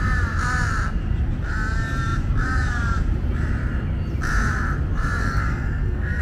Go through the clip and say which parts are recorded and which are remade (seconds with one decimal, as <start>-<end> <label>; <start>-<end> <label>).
0.0-5.2 recorded; 5.2-6.2 remade